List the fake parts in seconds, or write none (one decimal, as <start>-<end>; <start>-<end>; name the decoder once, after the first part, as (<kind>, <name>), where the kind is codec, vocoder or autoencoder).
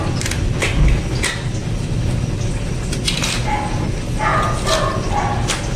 none